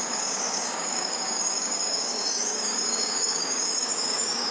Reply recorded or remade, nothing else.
remade